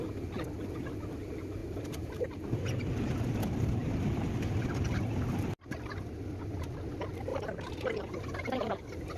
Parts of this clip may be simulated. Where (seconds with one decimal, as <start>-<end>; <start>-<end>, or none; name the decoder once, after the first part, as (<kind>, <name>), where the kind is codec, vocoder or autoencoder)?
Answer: 1.6-2.2 (vocoder, BigVGAN v2); 7.3-8.7